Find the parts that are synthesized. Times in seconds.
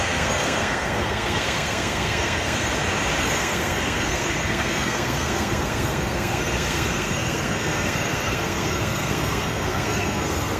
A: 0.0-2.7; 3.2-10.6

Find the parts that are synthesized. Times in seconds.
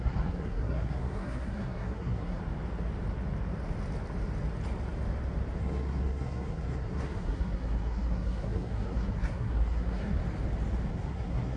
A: 0.0-2.4; 5.6-10.2; 10.9-11.6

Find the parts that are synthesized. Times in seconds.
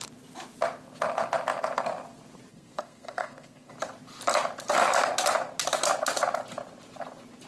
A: 2.5-3.7